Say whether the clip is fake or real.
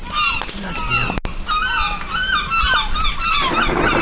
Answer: real